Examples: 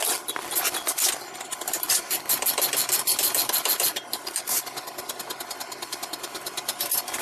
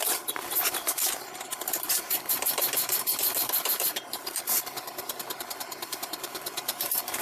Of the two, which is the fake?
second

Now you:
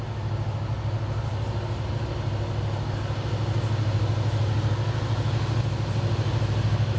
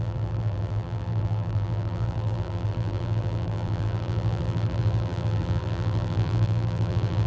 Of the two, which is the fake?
second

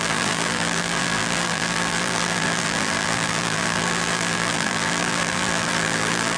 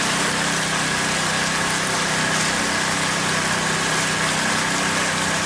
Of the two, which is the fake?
first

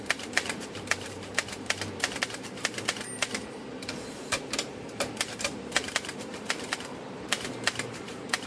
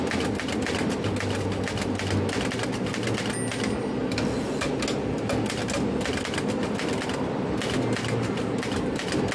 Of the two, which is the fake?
first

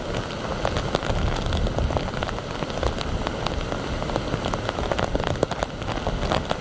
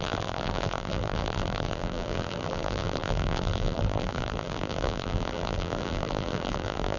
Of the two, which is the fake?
second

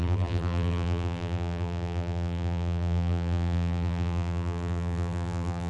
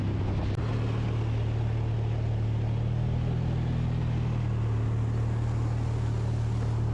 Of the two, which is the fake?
first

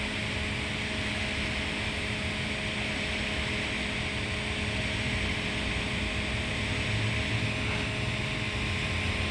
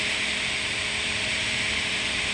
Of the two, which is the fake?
second